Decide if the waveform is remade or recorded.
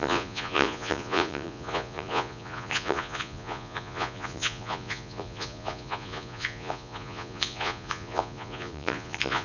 remade